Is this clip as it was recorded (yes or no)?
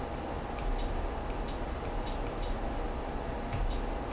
yes